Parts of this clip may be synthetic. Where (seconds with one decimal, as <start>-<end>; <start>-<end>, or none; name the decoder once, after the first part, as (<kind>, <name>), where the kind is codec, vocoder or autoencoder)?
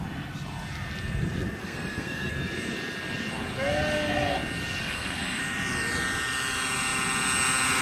1.6-2.3 (codec, SNAC); 4.8-5.4